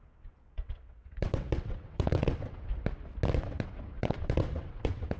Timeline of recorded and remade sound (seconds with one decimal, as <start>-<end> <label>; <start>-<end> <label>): 0.0-2.7 remade; 2.7-3.4 recorded; 3.4-5.2 remade